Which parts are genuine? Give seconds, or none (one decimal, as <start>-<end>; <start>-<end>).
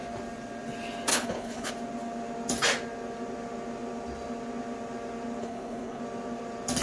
0.0-1.1; 1.7-5.4; 6.0-6.8